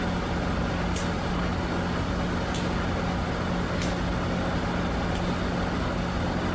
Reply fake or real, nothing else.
real